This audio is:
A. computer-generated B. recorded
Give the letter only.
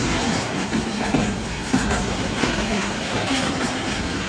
A